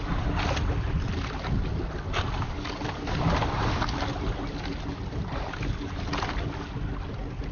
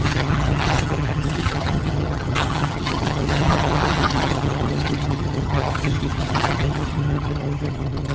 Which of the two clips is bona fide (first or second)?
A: first